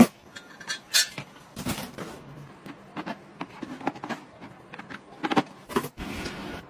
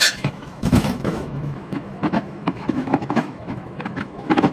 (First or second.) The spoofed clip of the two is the second